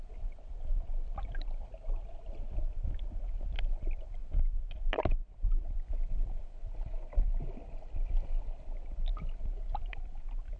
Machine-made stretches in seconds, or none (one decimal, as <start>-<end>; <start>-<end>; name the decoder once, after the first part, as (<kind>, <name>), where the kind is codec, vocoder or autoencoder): 0.0-9.1 (vocoder, BigVGAN v2); 9.9-10.6